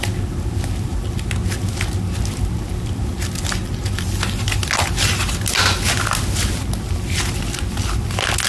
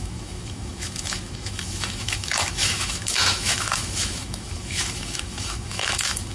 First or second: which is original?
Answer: first